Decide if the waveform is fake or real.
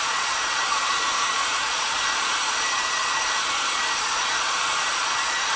fake